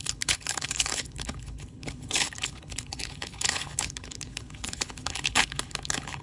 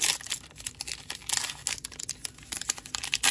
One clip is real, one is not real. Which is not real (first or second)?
first